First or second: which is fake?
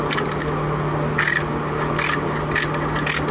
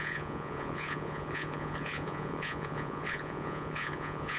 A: second